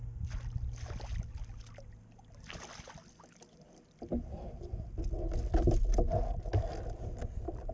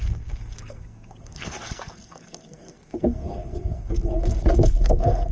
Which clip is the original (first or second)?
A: first